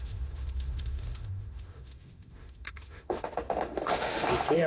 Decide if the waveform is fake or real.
fake